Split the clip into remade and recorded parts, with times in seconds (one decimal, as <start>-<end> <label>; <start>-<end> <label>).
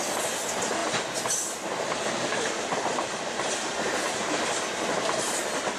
0.0-0.8 recorded; 0.8-4.3 remade; 4.3-5.8 recorded